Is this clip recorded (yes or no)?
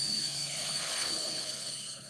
no